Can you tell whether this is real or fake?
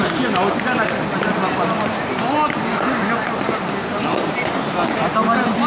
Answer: real